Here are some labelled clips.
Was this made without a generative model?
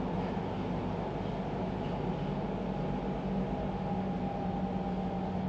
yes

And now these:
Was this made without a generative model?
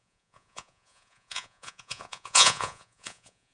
no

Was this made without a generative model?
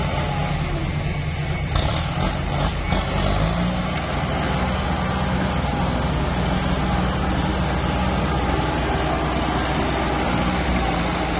yes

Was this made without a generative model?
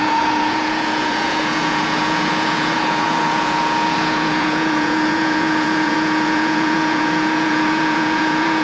no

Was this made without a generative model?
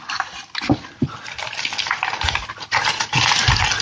yes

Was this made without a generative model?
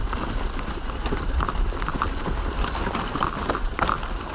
yes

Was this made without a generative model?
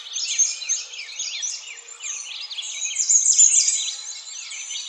yes